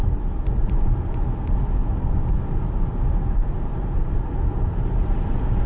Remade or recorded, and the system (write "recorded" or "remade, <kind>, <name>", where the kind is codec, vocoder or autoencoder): recorded